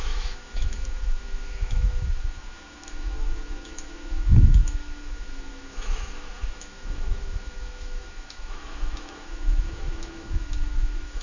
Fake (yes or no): yes